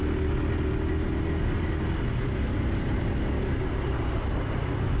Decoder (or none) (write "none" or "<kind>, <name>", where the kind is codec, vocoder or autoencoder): none